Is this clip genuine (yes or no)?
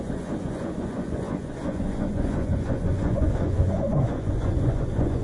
no